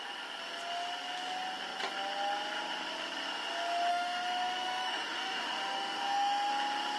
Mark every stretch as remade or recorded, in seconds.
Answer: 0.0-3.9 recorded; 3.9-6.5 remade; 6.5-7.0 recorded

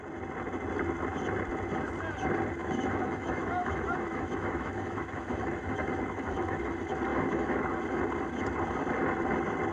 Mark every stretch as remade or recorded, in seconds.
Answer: 0.0-2.6 recorded; 2.6-6.6 remade; 6.6-7.1 recorded; 7.1-7.7 remade; 7.7-9.7 recorded

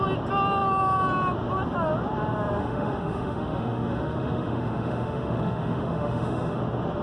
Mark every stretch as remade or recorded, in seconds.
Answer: 0.0-2.6 recorded; 2.6-6.6 remade; 6.6-7.0 recorded